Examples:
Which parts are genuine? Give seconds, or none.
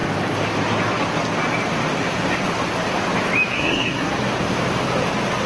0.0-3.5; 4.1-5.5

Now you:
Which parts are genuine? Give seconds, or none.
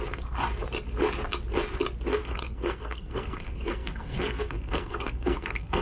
0.0-2.1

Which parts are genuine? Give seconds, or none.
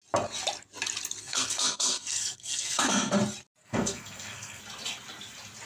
0.0-1.2; 3.1-3.6; 4.6-5.7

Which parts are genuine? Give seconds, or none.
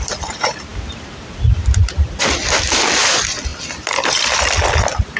0.0-5.2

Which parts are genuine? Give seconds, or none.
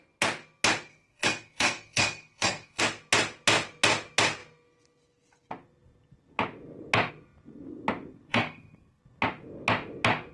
0.0-0.9; 2.8-8.3; 9.0-10.3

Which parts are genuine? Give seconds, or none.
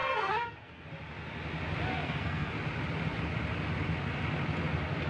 0.9-1.9; 2.5-5.1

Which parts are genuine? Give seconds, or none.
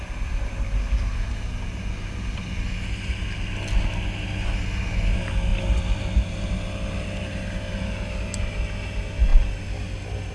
0.0-10.3